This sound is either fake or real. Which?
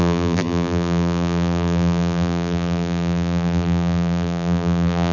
fake